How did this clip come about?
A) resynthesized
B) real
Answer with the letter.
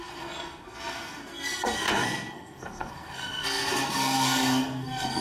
A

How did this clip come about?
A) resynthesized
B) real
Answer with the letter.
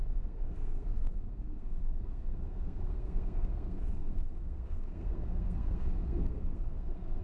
A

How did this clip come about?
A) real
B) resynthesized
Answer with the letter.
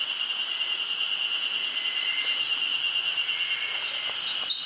A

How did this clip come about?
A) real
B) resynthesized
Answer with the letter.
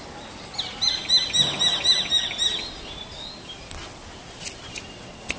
A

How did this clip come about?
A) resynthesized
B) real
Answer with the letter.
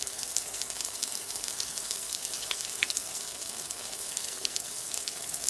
A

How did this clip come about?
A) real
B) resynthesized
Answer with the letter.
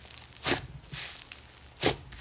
A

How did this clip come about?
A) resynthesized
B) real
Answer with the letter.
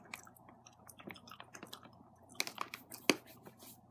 B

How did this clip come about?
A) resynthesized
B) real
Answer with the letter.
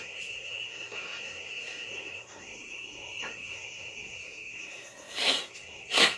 A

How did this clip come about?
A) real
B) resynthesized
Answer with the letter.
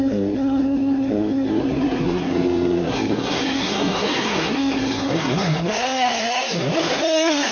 B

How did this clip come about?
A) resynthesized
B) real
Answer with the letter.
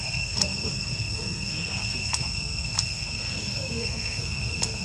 A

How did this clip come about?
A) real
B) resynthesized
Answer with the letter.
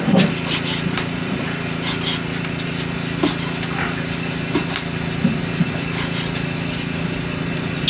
A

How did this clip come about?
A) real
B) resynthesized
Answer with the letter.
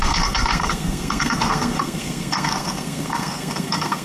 B